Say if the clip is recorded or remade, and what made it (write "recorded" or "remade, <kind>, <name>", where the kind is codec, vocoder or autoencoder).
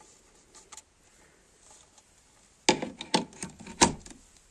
recorded